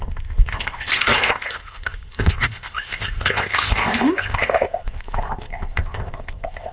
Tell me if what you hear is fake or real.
fake